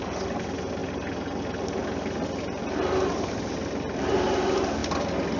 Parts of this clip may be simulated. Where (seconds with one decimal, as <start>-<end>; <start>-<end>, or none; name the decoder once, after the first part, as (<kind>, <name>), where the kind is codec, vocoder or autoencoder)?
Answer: none